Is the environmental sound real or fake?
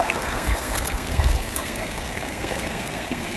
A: fake